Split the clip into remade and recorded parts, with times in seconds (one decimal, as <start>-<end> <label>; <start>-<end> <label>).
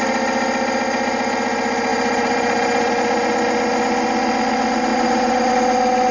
0.0-1.9 recorded; 1.9-2.9 remade; 2.9-4.9 recorded; 4.9-5.5 remade; 5.5-6.1 recorded